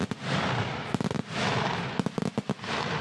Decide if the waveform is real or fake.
real